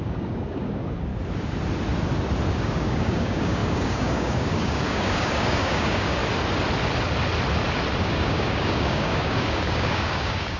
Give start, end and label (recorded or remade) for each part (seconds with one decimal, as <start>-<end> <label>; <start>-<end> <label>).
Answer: 0.0-1.1 remade; 1.1-2.5 recorded; 2.5-6.2 remade; 6.2-8.0 recorded; 8.0-10.6 remade